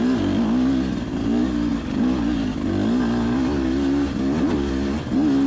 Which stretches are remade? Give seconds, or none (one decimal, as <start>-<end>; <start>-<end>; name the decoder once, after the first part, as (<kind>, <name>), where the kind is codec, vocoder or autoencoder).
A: none